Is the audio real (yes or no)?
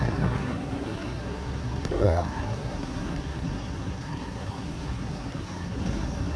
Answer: no